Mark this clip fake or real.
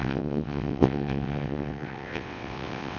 fake